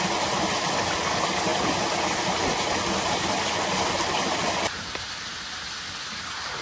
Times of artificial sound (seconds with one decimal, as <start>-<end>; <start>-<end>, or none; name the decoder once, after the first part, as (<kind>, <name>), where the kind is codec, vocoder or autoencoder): none